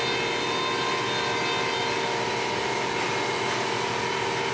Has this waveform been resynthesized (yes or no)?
no